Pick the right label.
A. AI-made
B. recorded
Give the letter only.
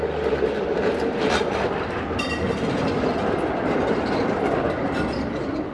B